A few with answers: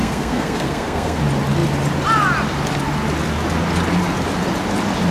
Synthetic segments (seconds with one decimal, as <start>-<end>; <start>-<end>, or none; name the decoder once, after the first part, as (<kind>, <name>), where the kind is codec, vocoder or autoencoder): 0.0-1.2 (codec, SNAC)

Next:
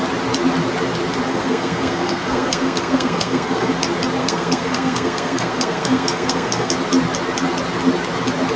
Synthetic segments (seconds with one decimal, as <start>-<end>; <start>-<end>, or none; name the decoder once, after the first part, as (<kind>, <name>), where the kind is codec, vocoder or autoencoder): 1.3-3.7 (codec, SNAC); 4.2-6.7

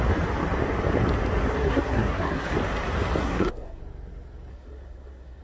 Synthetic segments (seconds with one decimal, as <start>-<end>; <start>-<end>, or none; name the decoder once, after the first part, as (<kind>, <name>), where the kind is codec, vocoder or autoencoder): 1.5-2.5 (codec, SNAC); 3.2-3.8; 4.5-5.4

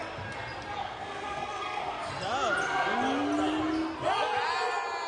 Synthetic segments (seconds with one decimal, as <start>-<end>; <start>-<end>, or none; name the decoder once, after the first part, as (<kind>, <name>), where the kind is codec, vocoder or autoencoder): 0.8-2.1 (codec, SNAC)

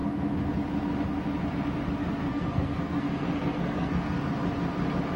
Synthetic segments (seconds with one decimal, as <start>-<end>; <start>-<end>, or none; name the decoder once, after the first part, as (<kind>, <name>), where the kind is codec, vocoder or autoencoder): 2.3-4.2 (codec, SNAC)